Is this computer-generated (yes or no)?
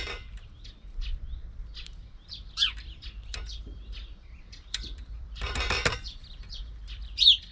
yes